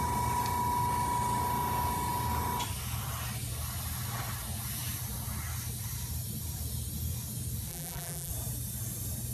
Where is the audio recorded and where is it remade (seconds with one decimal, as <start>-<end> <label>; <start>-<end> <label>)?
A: 0.0-7.7 recorded; 7.7-8.3 remade; 8.3-9.3 recorded